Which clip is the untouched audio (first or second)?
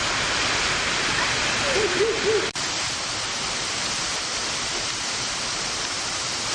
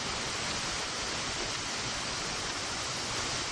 first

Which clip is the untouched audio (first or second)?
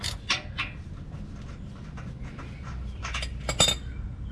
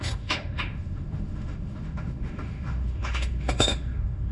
first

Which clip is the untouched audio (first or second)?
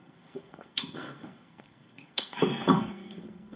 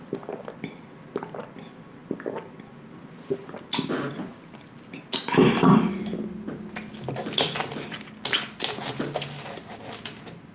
second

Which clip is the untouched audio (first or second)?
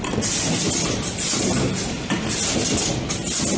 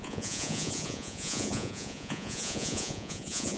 first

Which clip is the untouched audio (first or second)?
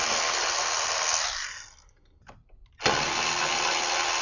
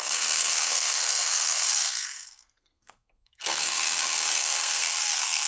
first